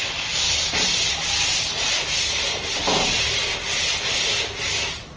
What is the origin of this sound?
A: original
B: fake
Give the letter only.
A